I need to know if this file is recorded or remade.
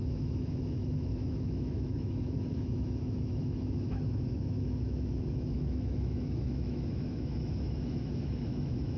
remade